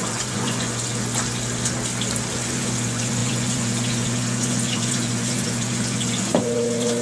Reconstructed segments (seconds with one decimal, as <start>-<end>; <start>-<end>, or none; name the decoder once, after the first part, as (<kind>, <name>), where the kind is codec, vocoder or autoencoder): 0.0-0.9 (vocoder, Vocos); 2.3-7.0

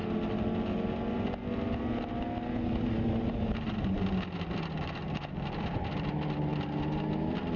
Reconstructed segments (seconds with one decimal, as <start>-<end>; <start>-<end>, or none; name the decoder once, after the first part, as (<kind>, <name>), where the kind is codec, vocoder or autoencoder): none

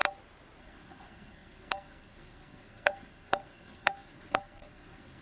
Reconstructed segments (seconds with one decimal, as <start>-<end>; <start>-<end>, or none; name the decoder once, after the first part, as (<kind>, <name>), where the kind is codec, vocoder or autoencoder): 0.6-5.2 (codec, SNAC)

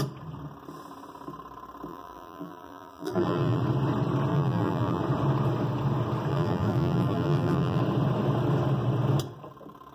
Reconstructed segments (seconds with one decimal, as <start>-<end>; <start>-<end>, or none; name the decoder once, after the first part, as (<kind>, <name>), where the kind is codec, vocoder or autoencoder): 1.9-3.6 (vocoder, BigVGAN v2); 4.3-5.0; 6.3-7.8